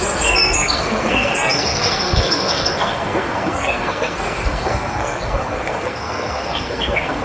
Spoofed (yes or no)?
yes